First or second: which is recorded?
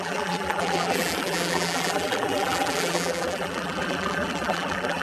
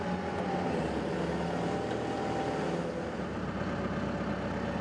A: second